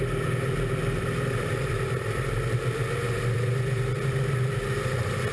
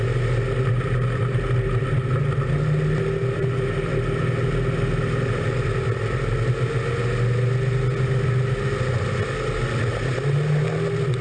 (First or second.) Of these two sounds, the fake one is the first